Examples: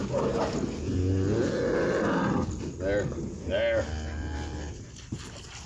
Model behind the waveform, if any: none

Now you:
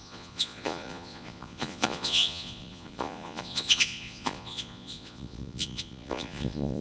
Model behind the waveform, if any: vocoder, Vocos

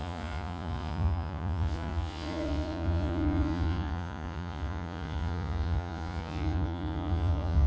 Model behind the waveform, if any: vocoder, Vocos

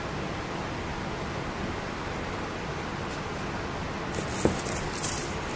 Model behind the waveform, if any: none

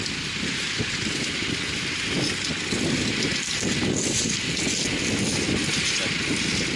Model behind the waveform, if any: none